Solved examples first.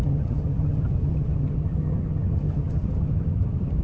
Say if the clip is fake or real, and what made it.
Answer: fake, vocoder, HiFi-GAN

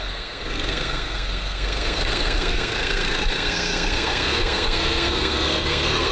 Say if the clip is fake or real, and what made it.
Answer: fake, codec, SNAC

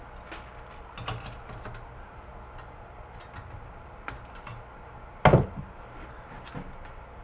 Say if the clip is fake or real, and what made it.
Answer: real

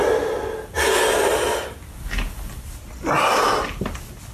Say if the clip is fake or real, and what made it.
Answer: real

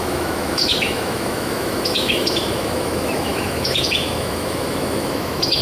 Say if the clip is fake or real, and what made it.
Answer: fake, autoencoder, DAC-VAE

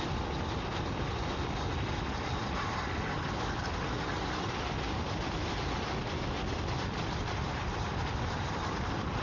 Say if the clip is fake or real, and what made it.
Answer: real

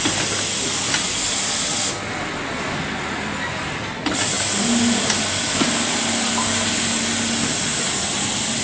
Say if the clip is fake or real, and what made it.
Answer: real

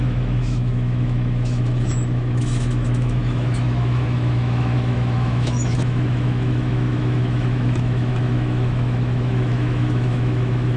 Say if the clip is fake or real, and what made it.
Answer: fake, autoencoder, DAC-VAE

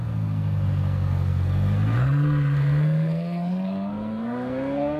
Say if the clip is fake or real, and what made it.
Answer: fake, codec, SNAC